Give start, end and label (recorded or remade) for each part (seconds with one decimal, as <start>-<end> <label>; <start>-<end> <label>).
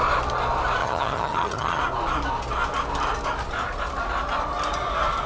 0.0-0.8 recorded; 0.8-1.8 remade; 1.8-5.3 recorded